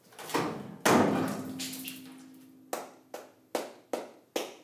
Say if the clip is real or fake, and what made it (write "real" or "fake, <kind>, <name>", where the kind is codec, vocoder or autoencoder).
real